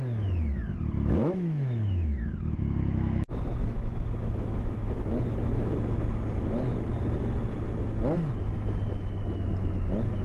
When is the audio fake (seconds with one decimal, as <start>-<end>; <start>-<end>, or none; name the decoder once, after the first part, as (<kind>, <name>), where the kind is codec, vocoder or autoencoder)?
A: 1.2-5.7 (autoencoder, DAC-VAE)